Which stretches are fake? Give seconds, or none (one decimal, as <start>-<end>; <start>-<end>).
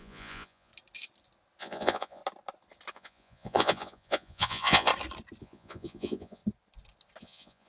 0.0-0.7; 1.6-2.2; 2.9-4.9; 5.4-6.4; 7.2-7.7